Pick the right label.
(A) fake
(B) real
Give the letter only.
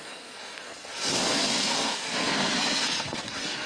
A